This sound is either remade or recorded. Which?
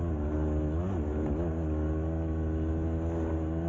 recorded